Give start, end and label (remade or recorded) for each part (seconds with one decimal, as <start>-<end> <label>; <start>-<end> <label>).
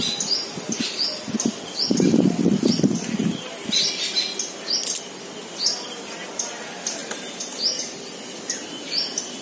0.0-9.4 recorded